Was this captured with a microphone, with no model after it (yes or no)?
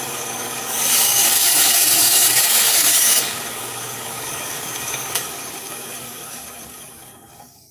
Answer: no